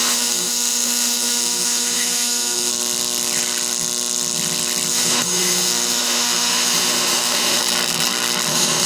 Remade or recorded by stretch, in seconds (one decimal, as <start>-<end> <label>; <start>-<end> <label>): 0.0-2.7 remade; 2.7-4.9 recorded; 4.9-7.6 remade; 7.6-8.5 recorded; 8.5-8.9 remade